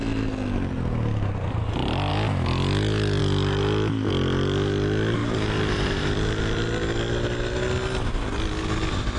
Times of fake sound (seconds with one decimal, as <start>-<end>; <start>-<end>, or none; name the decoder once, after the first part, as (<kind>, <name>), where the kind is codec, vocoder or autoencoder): none